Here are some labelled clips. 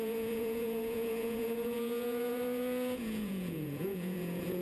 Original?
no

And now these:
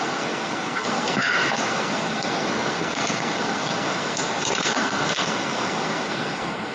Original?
no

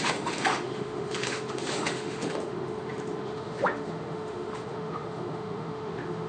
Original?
no